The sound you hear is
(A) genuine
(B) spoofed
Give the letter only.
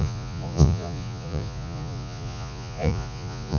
B